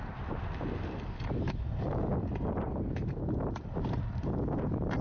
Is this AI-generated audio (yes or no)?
no